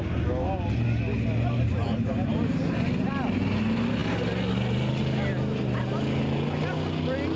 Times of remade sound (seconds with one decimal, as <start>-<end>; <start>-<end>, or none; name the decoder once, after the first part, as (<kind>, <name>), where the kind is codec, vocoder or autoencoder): none

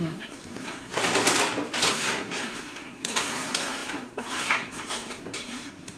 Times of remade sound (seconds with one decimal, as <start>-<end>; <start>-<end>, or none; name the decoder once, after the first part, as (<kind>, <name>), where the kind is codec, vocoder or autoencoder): 0.0-1.0 (codec, SNAC); 1.9-6.0

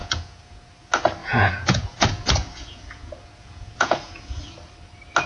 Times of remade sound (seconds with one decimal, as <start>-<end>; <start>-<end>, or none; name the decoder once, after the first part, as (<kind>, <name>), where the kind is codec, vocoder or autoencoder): 0.0-0.7 (vocoder, Vocos); 1.2-4.4

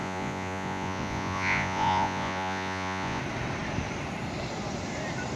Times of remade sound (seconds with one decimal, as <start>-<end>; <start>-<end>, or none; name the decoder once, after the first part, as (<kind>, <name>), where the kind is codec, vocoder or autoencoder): 0.0-3.2 (vocoder, Vocos)

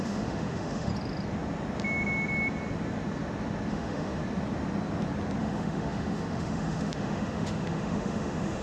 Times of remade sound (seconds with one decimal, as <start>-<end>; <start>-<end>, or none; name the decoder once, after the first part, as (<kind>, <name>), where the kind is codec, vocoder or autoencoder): 0.0-0.9 (autoencoder, DAC-VAE); 3.7-4.2; 5.4-8.6